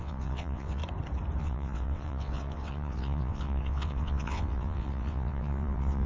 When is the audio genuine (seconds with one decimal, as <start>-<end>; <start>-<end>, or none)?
0.8-1.4